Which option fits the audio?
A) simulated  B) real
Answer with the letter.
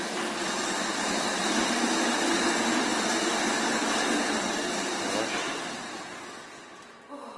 B